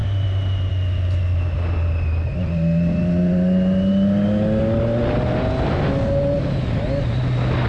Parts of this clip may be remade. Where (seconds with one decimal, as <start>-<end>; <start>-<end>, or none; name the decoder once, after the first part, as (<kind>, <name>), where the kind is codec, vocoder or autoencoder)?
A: none